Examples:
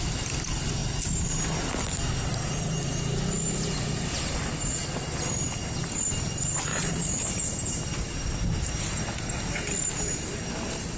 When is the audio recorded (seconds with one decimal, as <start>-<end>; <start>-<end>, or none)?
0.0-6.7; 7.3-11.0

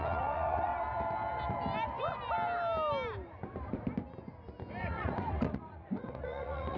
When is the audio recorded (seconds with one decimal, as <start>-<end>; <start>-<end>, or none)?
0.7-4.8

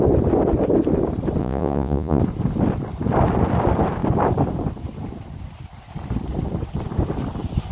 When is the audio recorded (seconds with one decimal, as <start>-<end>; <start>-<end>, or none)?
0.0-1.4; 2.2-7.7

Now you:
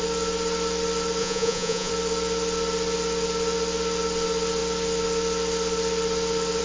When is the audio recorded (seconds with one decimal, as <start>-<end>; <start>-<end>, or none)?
0.0-1.2; 1.9-6.6